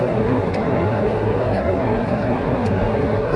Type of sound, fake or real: fake